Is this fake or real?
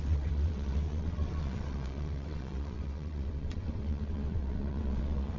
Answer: fake